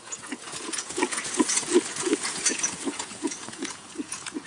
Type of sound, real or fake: fake